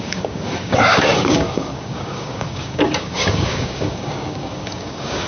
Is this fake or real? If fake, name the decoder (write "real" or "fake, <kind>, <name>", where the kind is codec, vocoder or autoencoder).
fake, codec, DAC